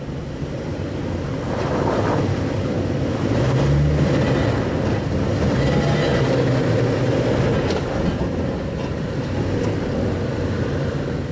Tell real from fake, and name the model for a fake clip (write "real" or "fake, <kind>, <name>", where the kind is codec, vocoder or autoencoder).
real